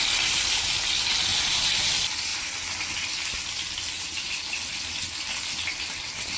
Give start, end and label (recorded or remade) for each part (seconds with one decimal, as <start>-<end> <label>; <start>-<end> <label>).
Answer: 0.0-1.3 recorded; 1.3-1.9 remade; 1.9-6.4 recorded